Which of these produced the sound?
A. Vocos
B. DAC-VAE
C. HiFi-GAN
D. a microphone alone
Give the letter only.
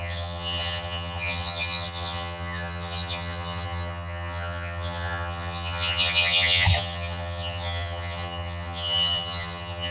C